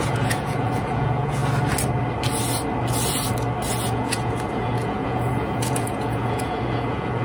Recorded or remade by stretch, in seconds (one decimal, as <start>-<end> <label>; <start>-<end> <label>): 0.0-1.4 remade; 1.4-3.7 recorded; 3.7-7.2 remade